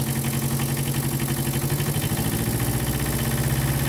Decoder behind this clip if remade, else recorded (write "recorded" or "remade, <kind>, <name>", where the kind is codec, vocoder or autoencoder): recorded